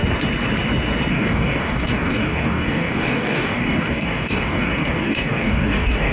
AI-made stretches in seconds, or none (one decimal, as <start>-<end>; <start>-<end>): 1.1-6.1